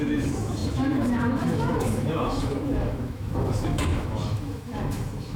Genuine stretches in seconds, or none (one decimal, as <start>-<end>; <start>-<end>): none